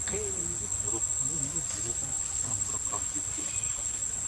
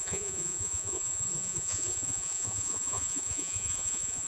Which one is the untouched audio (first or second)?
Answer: first